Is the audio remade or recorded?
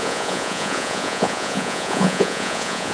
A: remade